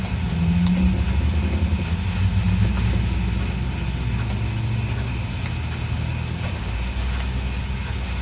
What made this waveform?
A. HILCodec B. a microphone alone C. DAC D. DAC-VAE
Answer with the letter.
B